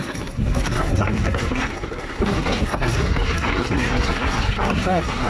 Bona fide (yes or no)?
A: no